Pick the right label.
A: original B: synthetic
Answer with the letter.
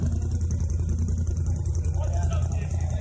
A